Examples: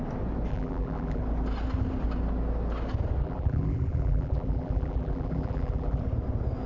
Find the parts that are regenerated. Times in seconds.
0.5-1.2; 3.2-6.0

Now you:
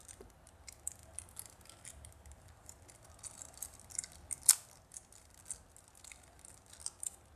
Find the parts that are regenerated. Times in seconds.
none

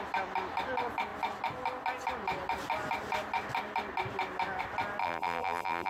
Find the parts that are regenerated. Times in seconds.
5.0-5.9

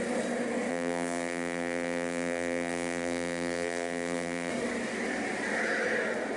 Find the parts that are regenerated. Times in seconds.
0.7-4.5